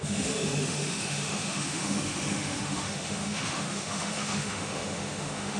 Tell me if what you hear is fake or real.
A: fake